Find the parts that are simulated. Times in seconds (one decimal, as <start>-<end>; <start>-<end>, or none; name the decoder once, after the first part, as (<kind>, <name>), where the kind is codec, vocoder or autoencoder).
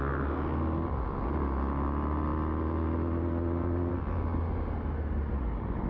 none